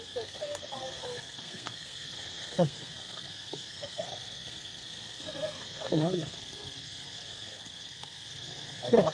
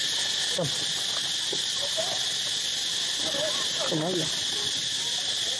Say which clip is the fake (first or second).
first